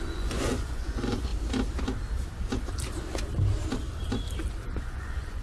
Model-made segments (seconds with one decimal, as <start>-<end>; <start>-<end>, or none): 0.0-1.3; 4.5-5.4